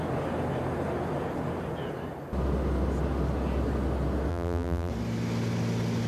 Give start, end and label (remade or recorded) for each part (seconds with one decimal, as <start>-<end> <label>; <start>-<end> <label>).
0.0-4.3 recorded; 4.3-4.9 remade; 4.9-6.1 recorded